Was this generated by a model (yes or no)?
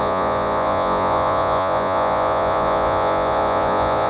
yes